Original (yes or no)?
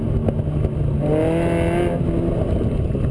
yes